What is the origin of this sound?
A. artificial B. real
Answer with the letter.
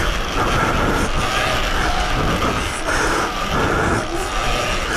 B